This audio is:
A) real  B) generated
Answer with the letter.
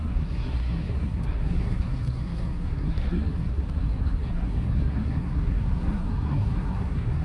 B